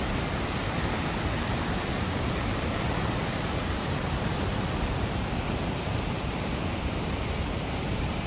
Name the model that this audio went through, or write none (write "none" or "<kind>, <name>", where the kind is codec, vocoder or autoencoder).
vocoder, BigVGAN v2